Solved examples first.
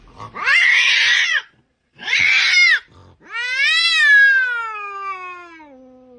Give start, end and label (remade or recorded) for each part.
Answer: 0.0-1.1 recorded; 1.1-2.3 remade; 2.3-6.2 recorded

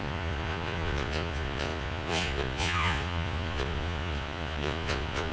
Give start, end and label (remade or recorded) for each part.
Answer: 0.0-5.3 remade

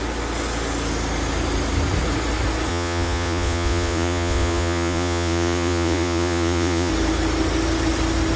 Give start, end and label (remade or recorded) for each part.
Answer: 0.0-2.7 recorded; 2.7-6.9 remade; 6.9-8.4 recorded

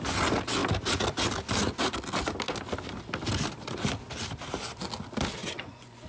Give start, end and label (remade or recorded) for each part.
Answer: 0.0-5.4 recorded; 5.4-6.1 remade